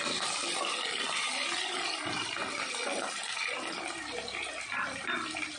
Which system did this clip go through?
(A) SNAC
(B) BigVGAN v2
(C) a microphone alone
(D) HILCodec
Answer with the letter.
B